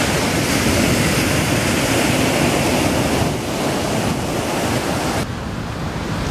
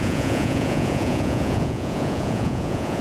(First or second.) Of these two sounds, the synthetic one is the second